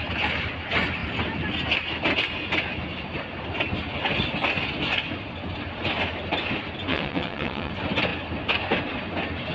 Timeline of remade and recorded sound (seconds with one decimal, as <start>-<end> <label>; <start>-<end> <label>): 0.0-6.9 recorded; 6.9-7.7 remade; 7.7-9.5 recorded